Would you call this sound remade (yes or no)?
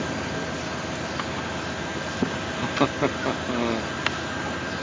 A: no